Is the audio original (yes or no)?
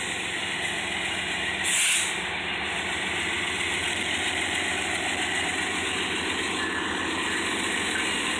yes